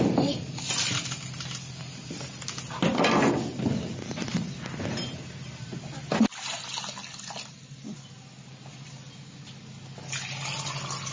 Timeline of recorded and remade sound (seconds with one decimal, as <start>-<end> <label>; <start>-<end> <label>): 0.0-11.1 recorded